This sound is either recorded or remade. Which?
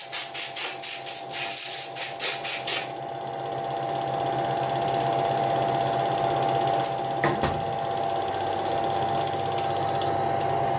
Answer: recorded